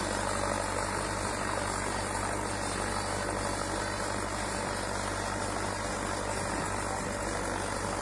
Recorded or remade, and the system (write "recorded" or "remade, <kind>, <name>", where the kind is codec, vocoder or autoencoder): recorded